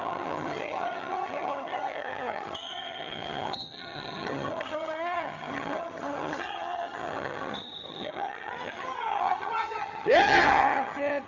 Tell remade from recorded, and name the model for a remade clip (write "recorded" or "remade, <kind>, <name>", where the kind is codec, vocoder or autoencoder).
remade, vocoder, HiFi-GAN